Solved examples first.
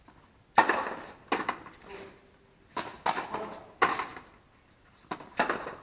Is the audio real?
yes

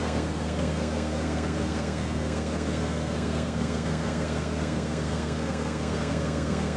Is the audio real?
no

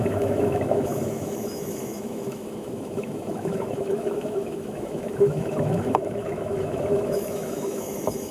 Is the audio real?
no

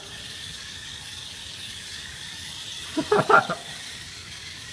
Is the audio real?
no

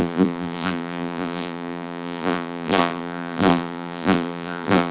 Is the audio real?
no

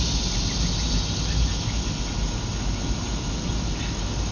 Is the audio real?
yes